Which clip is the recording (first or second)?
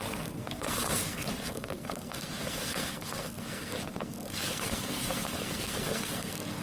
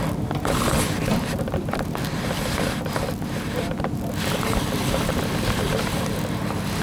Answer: second